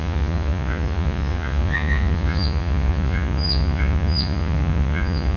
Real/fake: fake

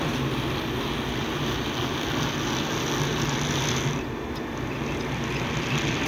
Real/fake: real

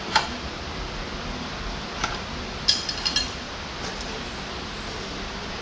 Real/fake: fake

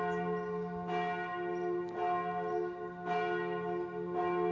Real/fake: real